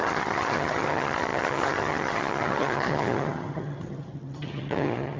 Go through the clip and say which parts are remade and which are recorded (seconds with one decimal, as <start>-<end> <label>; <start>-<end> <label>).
0.0-5.2 remade